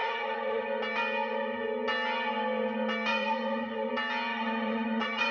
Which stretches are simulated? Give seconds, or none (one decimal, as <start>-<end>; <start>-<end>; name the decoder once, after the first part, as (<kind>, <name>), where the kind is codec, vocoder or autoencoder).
0.0-0.6 (vocoder, Vocos); 3.1-3.9; 4.3-5.3